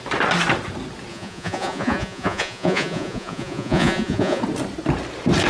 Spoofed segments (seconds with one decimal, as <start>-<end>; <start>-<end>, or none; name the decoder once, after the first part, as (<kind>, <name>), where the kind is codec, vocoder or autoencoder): 1.1-4.4 (vocoder, Vocos)